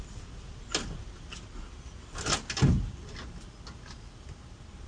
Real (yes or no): yes